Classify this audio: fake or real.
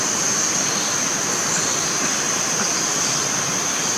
real